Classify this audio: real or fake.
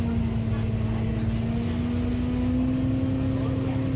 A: real